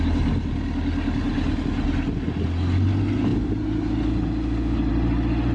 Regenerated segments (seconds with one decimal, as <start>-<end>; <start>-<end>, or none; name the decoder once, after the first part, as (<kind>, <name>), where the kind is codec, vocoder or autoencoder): none